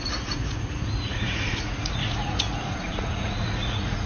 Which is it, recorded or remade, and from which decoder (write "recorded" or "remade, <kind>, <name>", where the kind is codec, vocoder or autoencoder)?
remade, vocoder, Vocos